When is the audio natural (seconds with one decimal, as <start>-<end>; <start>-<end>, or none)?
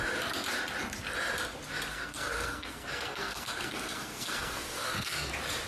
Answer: 0.0-1.9; 5.3-5.7